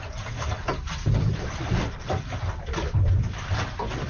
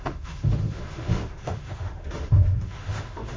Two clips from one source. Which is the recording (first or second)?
first